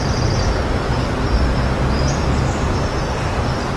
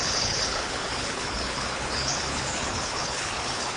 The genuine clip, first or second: first